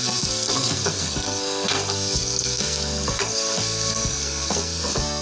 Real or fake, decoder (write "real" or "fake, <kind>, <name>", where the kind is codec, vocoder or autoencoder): fake, codec, SNAC